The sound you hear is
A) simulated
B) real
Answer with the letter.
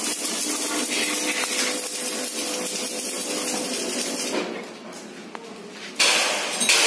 B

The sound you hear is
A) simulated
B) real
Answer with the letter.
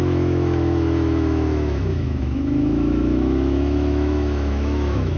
A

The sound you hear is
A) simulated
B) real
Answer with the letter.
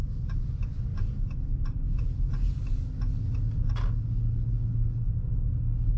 B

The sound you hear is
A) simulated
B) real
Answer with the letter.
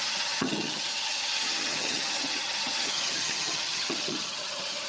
A